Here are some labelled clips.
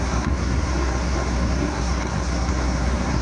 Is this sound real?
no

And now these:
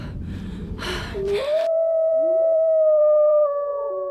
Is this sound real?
no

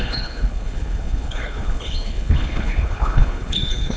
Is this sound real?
no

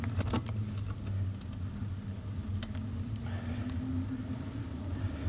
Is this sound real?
yes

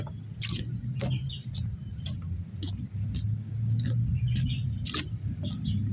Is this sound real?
yes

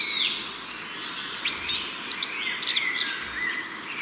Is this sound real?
yes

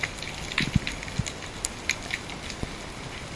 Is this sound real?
yes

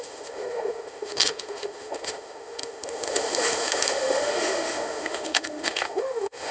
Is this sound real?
no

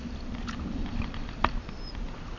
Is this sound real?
yes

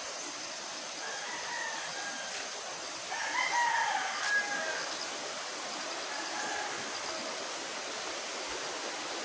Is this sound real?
yes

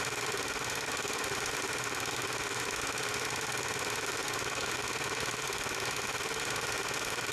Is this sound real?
no